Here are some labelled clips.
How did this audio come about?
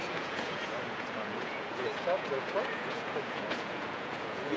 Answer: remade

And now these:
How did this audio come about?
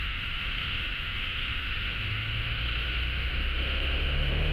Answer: remade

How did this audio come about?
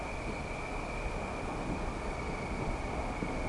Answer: recorded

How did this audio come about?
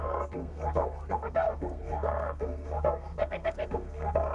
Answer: remade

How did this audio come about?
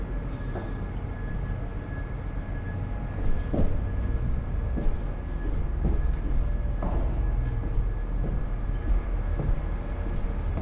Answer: recorded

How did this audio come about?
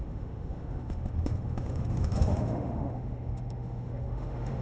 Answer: remade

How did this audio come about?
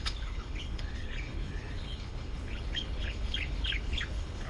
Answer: remade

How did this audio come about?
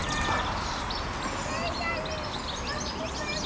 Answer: recorded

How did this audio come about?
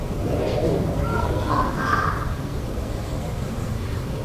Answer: remade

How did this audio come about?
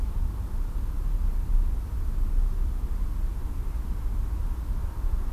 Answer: recorded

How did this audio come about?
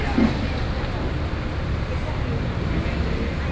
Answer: recorded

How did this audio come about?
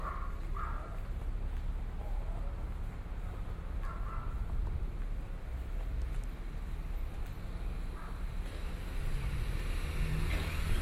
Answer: recorded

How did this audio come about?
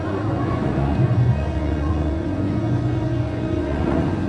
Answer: remade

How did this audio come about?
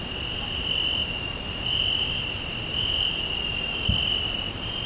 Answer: recorded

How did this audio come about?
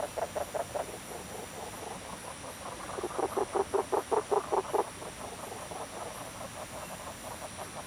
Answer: recorded